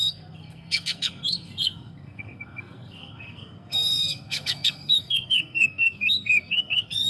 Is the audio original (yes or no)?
no